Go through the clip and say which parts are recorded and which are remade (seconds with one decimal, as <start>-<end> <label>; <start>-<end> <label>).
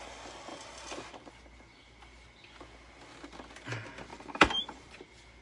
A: 0.0-0.5 recorded; 0.5-1.3 remade; 1.3-4.1 recorded; 4.1-4.9 remade; 4.9-5.4 recorded